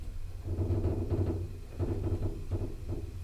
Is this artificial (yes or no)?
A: yes